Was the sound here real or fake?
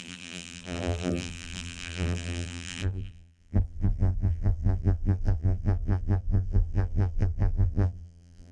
fake